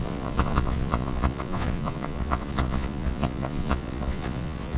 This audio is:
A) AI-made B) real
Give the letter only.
A